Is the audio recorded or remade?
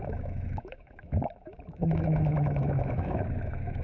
remade